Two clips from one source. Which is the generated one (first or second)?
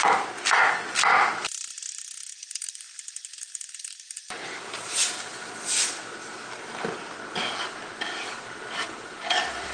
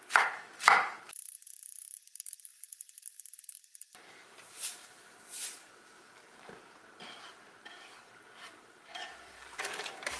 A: second